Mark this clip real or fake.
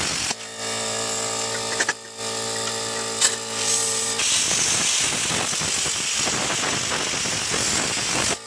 real